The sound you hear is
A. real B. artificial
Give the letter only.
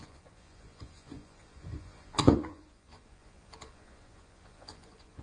B